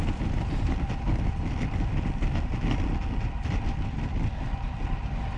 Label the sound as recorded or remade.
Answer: recorded